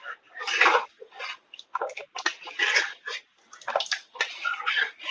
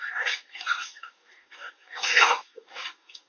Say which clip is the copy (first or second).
second